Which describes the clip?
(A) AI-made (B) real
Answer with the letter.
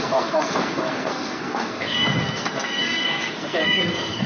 A